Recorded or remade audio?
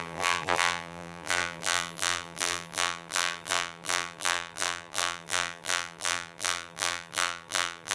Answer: remade